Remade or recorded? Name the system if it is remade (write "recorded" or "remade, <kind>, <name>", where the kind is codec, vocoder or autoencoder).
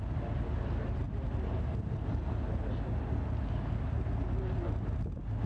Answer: recorded